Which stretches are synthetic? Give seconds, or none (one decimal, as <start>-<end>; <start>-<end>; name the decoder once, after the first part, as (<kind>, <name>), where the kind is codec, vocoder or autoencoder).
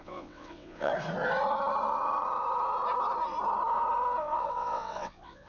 0.0-0.9 (vocoder, WaveNeXt); 4.2-5.5